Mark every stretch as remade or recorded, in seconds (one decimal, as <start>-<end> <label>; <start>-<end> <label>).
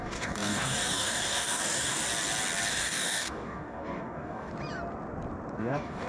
0.0-2.0 remade; 2.0-2.7 recorded; 2.7-4.5 remade; 4.5-5.6 recorded; 5.6-6.1 remade